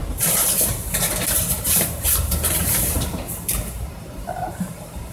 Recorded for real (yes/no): no